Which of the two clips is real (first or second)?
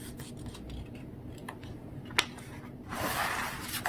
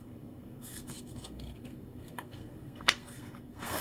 first